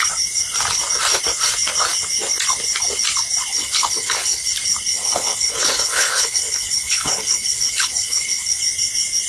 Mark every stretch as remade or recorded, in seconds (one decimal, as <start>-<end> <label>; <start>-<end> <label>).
0.0-3.5 recorded; 3.5-4.5 remade; 4.5-4.9 recorded; 4.9-8.6 remade; 8.6-9.3 recorded